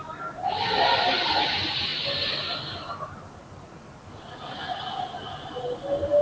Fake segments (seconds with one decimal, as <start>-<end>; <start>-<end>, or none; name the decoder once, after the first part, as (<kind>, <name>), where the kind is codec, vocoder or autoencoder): none